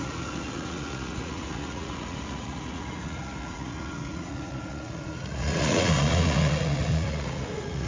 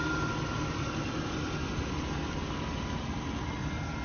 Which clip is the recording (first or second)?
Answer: second